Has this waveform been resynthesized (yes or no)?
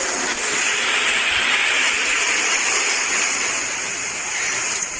yes